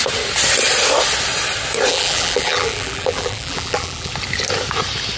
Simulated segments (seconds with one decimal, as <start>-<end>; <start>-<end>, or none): 1.9-4.1